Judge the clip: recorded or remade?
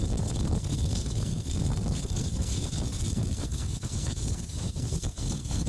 remade